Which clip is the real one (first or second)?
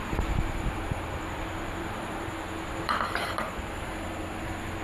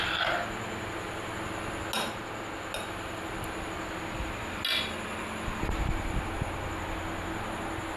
second